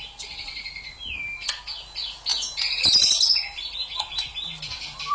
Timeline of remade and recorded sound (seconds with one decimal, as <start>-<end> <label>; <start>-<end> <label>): 0.0-5.1 recorded